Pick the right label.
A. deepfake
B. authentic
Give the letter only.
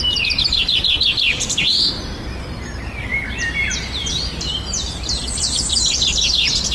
A